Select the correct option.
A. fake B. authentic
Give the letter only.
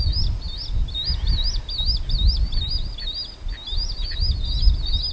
B